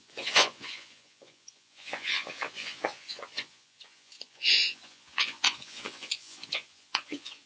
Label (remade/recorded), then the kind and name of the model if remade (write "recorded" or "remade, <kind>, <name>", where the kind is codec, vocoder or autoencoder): remade, vocoder, Vocos